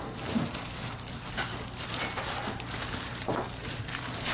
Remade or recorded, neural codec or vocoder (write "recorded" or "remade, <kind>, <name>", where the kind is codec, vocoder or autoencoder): remade, vocoder, BigVGAN v2